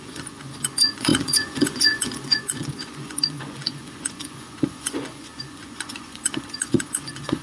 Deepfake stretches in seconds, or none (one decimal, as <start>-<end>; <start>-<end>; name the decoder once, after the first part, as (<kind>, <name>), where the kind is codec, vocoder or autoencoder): 0.0-7.4 (vocoder, Vocos)